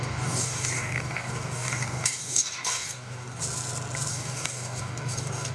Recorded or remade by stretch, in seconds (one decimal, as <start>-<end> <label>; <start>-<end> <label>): 0.0-3.4 remade; 3.4-4.1 recorded; 4.1-5.5 remade